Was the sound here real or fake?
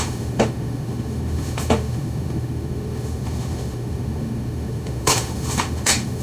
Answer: fake